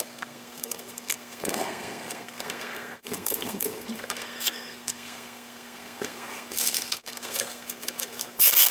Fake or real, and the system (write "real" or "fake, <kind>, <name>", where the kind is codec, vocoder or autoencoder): fake, codec, SNAC